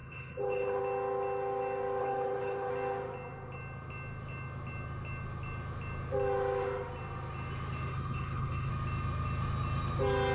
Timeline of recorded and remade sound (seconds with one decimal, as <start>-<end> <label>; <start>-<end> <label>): 0.0-0.8 remade; 0.8-2.0 recorded; 2.0-2.7 remade; 2.7-7.9 recorded; 7.9-8.7 remade; 8.7-10.3 recorded